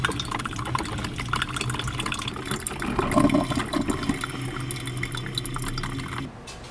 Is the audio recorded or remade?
recorded